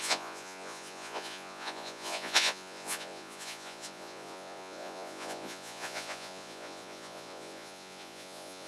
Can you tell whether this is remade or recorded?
remade